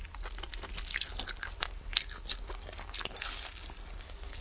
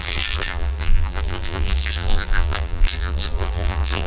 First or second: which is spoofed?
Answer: second